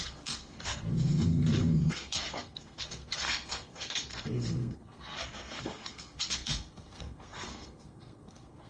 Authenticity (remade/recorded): remade